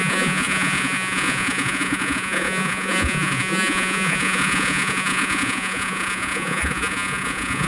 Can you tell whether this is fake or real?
fake